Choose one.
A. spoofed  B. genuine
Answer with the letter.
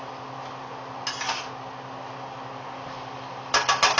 B